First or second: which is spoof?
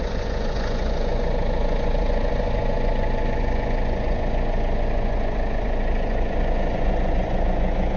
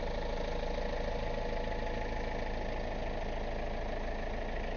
first